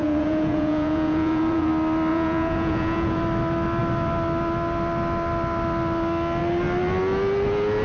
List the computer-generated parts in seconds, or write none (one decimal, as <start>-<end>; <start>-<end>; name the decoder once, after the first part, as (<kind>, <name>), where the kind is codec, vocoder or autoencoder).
0.0-1.7 (vocoder, Vocos); 2.1-3.2